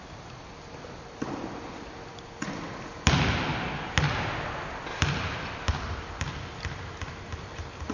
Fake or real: real